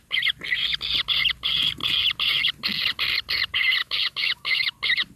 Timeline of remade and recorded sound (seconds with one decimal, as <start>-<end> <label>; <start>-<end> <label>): 0.0-3.8 recorded; 3.8-4.7 remade; 4.7-5.2 recorded